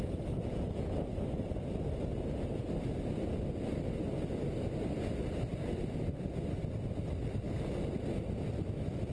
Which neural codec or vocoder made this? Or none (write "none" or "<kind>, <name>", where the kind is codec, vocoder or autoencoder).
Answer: none